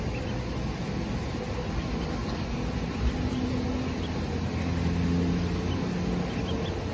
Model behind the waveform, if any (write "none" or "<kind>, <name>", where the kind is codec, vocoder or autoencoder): none